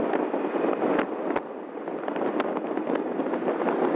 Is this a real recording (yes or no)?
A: yes